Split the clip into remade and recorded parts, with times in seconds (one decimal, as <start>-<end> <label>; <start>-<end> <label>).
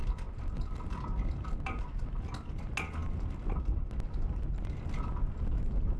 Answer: 0.0-6.0 recorded